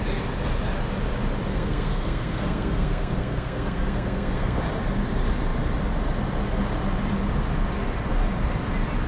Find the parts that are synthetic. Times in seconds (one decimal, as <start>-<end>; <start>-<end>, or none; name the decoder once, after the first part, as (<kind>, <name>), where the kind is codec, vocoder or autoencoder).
1.5-4.6 (codec, SNAC)